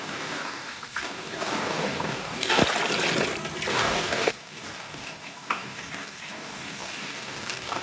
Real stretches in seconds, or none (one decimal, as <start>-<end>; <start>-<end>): 2.6-3.7

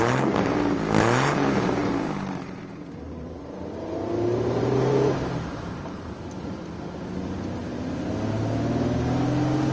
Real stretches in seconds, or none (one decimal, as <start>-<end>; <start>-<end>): 0.0-1.8; 6.2-7.6; 8.1-9.7

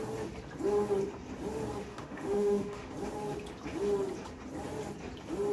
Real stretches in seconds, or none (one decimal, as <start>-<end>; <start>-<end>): 0.0-1.9; 2.9-5.5

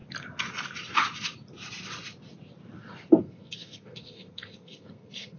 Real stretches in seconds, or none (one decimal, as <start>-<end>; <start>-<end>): 0.0-3.2

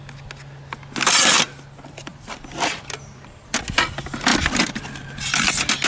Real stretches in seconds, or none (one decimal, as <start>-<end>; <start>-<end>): 0.0-2.1; 3.6-4.3; 5.5-5.9

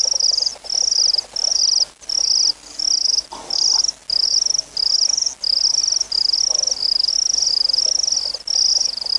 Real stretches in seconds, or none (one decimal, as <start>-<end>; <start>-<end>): 0.0-9.2